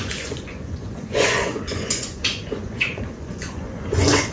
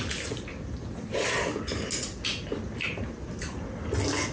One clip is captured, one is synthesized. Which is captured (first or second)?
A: second